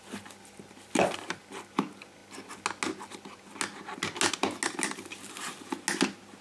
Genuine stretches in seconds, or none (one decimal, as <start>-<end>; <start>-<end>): 0.0-6.4